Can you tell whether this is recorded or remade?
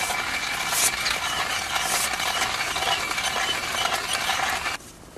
recorded